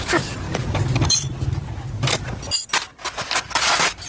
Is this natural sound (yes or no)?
no